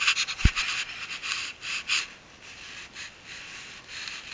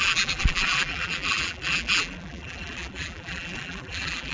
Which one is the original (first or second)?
first